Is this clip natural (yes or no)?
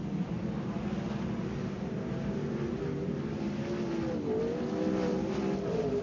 yes